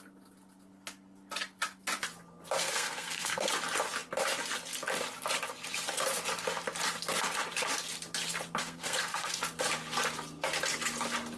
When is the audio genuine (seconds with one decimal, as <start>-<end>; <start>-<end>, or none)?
0.0-2.6; 3.5-8.6; 9.4-11.4